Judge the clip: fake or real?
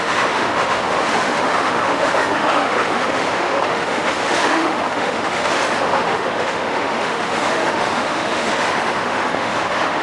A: fake